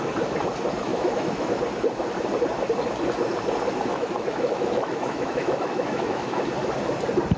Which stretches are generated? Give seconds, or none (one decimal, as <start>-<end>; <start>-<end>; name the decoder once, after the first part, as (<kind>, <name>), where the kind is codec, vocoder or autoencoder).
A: 0.9-1.6 (autoencoder, DAC-VAE); 3.9-6.4